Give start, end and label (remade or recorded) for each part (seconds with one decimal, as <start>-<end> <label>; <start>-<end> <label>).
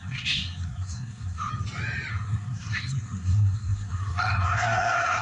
0.0-1.5 remade; 1.5-2.1 recorded; 2.1-5.2 remade